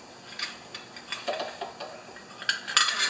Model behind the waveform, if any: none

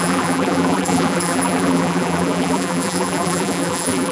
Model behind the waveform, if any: vocoder, BigVGAN v2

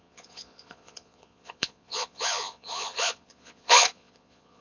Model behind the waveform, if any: vocoder, Vocos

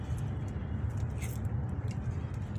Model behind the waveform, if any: none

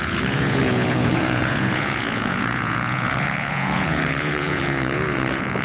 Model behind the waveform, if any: vocoder, Vocos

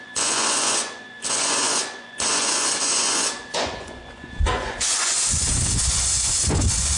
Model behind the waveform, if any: vocoder, Vocos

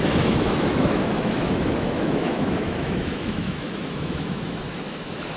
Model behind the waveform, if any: autoencoder, DAC-VAE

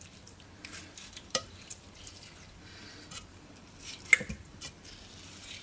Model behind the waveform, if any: vocoder, BigVGAN v2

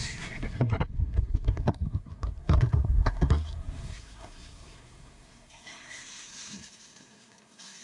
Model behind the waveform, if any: codec, SNAC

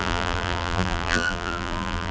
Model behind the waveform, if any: vocoder, BigVGAN v2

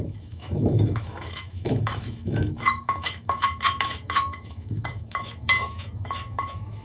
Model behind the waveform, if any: autoencoder, DAC-VAE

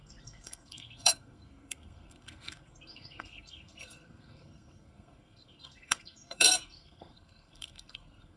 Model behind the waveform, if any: codec, SNAC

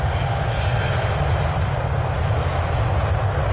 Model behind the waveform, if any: none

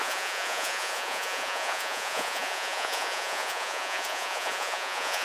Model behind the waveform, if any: vocoder, Vocos